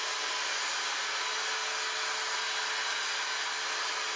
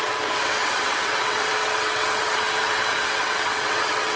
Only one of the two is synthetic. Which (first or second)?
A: second